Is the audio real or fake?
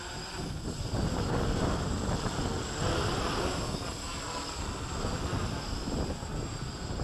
real